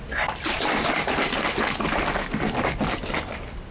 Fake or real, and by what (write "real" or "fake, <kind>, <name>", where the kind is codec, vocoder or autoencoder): real